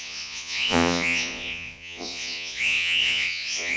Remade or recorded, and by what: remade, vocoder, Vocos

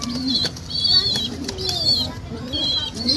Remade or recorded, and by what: recorded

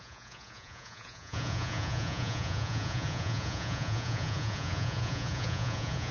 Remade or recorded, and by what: remade, vocoder, Vocos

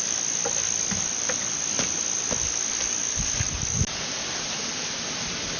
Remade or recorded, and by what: recorded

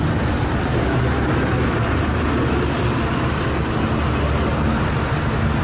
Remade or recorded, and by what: recorded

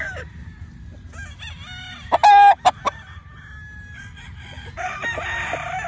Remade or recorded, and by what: recorded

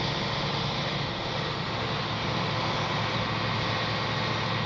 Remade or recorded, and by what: recorded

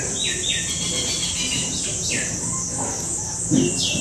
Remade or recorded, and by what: recorded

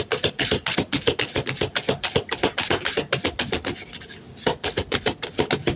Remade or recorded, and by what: recorded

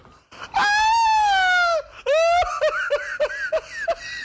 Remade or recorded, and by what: recorded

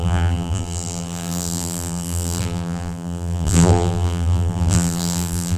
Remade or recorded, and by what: remade, vocoder, BigVGAN v2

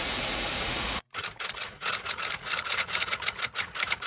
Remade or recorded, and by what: remade, vocoder, Vocos